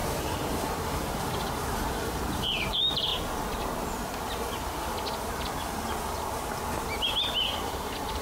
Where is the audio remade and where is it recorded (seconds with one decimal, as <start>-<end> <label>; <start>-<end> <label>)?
0.0-3.1 remade; 3.1-7.0 recorded; 7.0-8.2 remade